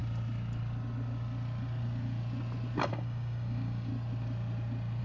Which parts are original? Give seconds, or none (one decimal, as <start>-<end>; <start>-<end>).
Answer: 0.0-2.9; 3.9-5.0